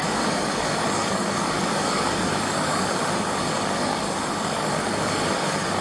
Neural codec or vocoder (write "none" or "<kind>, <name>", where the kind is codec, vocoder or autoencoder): codec, DAC